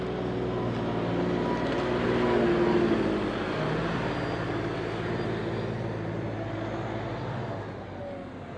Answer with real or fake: real